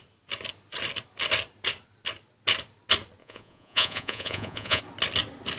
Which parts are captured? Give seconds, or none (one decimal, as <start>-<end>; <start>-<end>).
0.0-3.2; 4.8-5.6